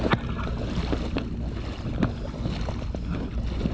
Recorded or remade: recorded